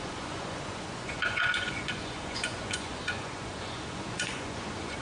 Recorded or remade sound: remade